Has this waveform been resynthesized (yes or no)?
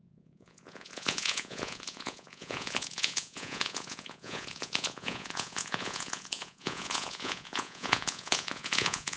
yes